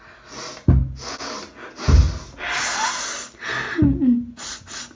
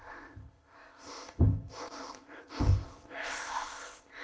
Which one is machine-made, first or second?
second